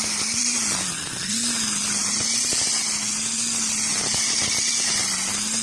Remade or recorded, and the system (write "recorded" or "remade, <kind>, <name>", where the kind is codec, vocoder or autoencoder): recorded